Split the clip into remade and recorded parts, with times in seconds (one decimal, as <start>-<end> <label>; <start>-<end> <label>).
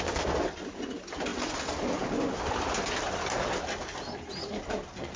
0.0-5.2 recorded